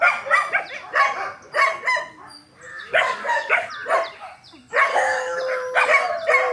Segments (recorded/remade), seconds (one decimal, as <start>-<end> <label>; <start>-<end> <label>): 0.0-2.7 recorded; 2.7-3.7 remade; 3.7-4.9 recorded; 4.9-5.4 remade; 5.4-6.5 recorded